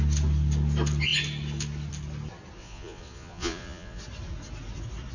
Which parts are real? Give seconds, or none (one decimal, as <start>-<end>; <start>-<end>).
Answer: 0.0-2.6; 4.0-5.1